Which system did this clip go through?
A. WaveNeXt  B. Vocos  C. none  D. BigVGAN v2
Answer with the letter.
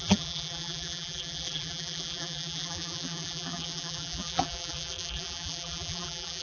D